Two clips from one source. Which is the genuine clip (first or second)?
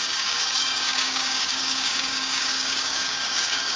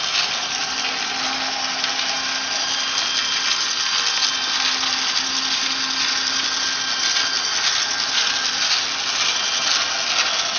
second